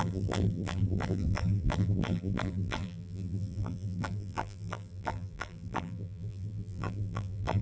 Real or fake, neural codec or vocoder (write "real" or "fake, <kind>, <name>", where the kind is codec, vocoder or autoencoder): fake, vocoder, BigVGAN v2